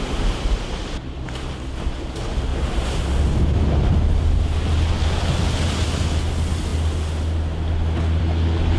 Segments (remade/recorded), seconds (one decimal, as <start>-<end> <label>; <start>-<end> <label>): 0.0-8.8 recorded